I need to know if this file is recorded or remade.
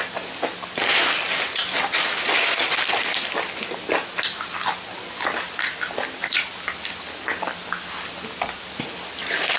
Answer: recorded